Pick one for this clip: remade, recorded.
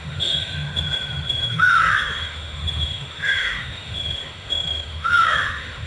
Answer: remade